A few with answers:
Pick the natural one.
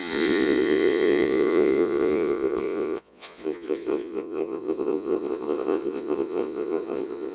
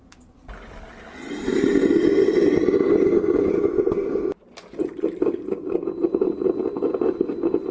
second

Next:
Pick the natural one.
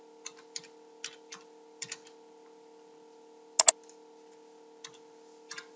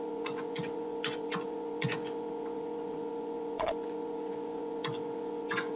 first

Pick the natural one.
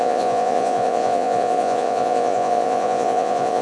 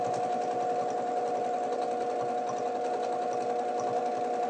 second